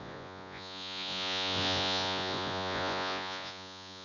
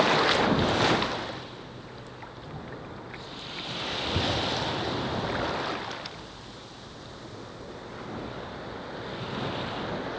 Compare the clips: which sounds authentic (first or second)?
second